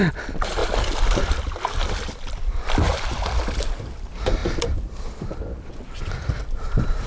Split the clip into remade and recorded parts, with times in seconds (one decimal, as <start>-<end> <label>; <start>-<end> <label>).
0.0-7.1 recorded